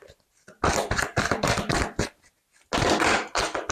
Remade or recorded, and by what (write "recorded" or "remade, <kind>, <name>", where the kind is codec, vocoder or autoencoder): recorded